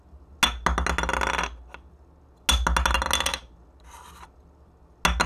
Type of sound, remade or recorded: recorded